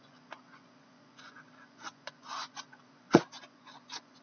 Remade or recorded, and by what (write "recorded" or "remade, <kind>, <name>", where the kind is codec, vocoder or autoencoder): remade, vocoder, Vocos